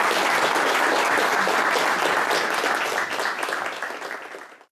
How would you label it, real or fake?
real